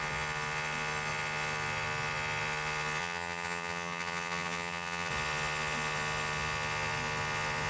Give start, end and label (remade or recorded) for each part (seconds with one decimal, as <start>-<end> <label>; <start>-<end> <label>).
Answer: 0.0-3.0 recorded; 3.0-5.1 remade; 5.1-7.7 recorded